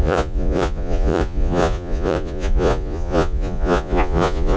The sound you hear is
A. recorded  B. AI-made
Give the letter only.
B